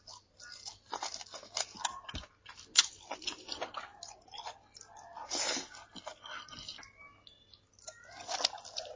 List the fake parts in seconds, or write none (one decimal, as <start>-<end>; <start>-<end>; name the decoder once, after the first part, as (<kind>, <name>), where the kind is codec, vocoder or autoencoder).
none